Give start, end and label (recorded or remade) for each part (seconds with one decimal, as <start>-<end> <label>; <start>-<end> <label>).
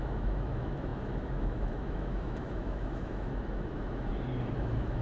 0.0-4.1 remade; 4.1-4.6 recorded; 4.6-5.0 remade